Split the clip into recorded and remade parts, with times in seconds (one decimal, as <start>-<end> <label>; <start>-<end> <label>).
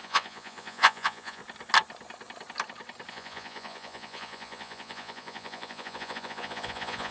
0.0-1.4 remade; 1.4-3.1 recorded; 3.1-7.1 remade